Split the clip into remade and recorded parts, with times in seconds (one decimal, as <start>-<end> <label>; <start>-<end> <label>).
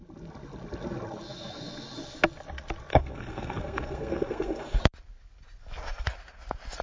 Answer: 0.0-2.9 recorded; 2.9-4.8 remade; 4.8-6.8 recorded